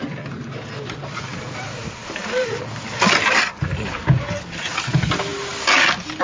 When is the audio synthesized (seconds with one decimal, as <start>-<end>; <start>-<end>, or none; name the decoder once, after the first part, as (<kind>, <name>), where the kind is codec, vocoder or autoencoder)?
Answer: 2.2-3.0 (vocoder, BigVGAN v2)